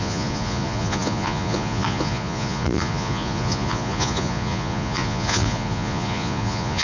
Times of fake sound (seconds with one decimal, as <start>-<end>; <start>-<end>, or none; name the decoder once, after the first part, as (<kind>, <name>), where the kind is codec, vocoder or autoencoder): 0.0-6.8 (vocoder, Vocos)